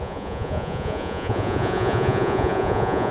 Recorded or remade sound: remade